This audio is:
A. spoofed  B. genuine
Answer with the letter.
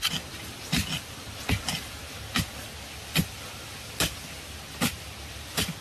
B